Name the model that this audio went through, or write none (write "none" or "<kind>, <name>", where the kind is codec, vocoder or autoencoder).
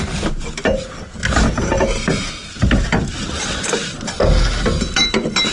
none